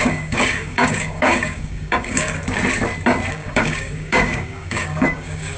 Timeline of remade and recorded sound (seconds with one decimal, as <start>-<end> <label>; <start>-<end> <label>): 0.0-2.4 remade; 2.4-3.3 recorded; 3.3-5.6 remade